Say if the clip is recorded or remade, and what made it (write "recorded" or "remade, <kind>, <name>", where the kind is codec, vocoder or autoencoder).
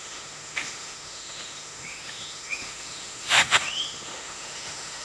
remade, autoencoder, DAC-VAE